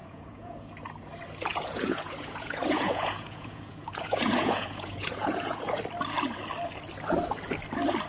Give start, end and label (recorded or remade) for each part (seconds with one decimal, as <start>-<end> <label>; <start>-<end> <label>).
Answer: 0.0-0.7 remade; 0.7-1.5 recorded; 1.5-5.8 remade; 5.8-8.1 recorded